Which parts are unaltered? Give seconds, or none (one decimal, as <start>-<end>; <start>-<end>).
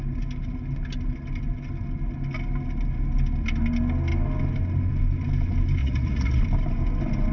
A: 0.0-5.8; 6.4-7.3